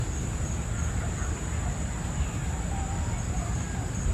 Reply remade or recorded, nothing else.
recorded